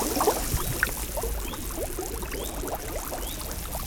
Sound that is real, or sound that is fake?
real